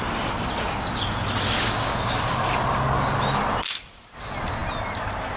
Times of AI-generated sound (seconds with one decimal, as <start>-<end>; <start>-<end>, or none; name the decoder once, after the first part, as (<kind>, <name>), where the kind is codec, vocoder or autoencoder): none